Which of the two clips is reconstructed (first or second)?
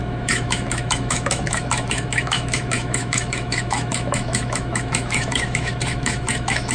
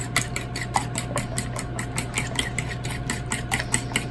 first